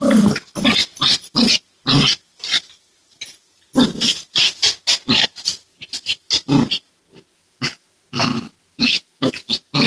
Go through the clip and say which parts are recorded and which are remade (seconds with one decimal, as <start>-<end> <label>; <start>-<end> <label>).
0.0-7.3 recorded; 7.3-9.3 remade; 9.3-9.9 recorded